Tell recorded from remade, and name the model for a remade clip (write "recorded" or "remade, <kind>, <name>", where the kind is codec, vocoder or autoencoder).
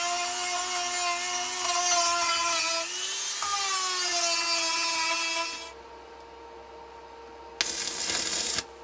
recorded